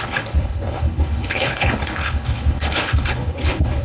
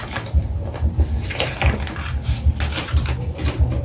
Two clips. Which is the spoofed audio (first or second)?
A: first